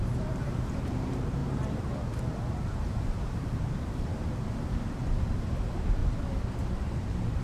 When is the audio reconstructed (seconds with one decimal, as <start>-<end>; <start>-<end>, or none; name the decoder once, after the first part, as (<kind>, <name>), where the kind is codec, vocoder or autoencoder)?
0.0-6.0 (vocoder, BigVGAN v2); 6.5-7.4